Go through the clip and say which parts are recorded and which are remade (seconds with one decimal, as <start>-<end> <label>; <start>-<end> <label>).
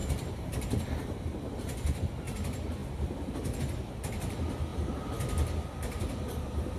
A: 0.0-2.0 remade; 2.0-2.8 recorded; 2.8-3.6 remade; 3.6-6.8 recorded